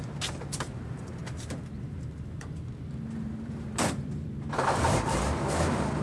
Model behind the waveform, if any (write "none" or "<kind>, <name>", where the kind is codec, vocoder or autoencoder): vocoder, BigVGAN v2